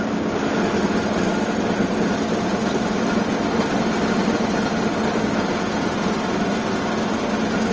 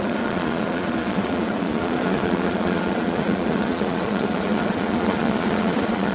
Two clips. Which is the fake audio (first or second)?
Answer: second